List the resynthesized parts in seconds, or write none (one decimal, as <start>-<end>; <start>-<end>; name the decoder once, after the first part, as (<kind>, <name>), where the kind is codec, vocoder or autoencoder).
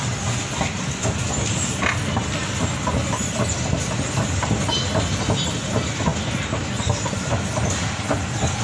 none